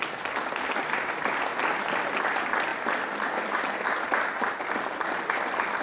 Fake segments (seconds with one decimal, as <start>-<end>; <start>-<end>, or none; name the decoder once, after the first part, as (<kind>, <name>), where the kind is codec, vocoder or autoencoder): none

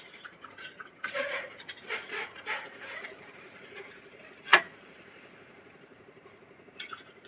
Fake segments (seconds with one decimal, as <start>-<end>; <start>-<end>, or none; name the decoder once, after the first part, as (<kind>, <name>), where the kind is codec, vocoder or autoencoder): 0.0-7.3 (vocoder, Vocos)

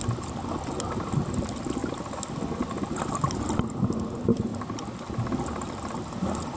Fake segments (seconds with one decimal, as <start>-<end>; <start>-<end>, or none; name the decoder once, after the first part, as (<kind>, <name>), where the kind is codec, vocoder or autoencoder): none

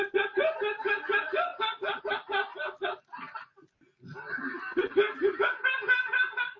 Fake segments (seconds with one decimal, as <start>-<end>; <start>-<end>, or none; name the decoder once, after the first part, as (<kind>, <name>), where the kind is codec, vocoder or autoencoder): none